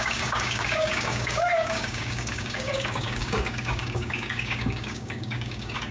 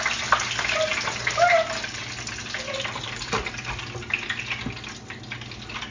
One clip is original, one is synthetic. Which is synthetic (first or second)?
first